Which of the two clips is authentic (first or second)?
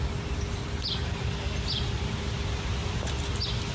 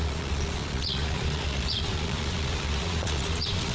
first